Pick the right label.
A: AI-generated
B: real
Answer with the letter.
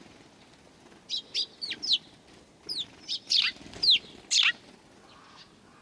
B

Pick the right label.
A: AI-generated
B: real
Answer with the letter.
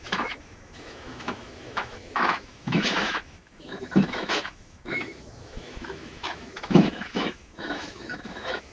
A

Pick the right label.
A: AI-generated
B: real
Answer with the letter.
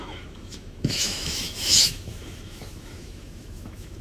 A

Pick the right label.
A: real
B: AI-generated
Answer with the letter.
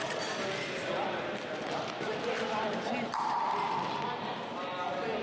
A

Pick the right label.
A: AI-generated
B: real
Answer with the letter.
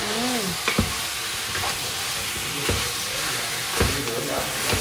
B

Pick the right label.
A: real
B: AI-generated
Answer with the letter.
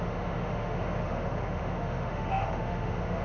B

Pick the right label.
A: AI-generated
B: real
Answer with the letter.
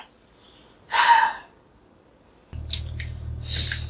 B